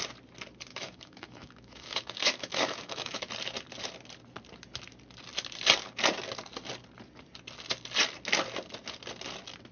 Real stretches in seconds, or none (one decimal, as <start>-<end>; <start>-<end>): 0.0-0.7; 3.3-9.7